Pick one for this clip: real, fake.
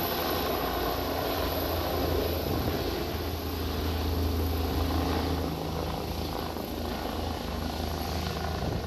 real